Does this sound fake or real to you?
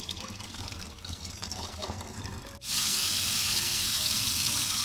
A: fake